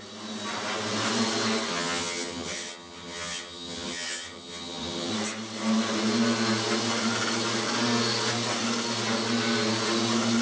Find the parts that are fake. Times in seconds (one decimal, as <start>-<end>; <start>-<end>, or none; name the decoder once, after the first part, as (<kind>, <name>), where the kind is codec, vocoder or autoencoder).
1.7-5.1 (vocoder, HiFi-GAN)